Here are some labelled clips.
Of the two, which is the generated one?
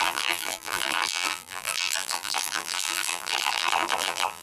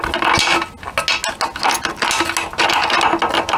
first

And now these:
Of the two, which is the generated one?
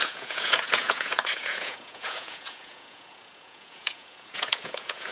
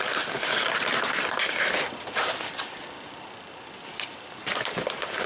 first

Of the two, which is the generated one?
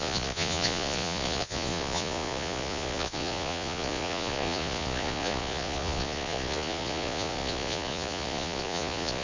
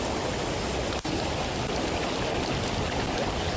first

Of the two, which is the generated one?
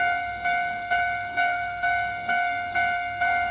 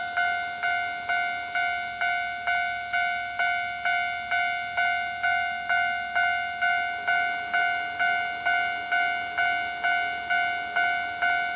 first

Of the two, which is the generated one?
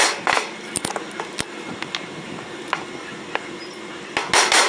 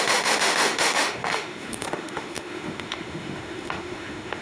second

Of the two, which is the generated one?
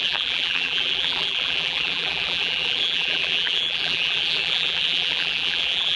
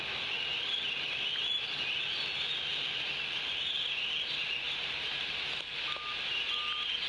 first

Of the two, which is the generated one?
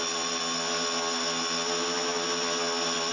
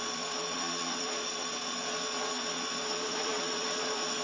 second